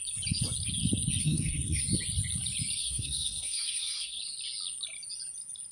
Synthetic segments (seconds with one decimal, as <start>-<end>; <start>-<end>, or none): 1.2-1.8; 2.8-4.2